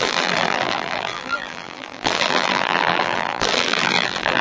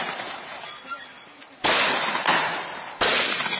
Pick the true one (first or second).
second